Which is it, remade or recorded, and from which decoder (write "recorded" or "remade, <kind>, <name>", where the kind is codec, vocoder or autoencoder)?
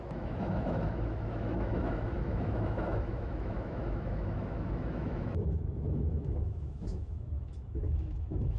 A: remade, autoencoder, DAC-VAE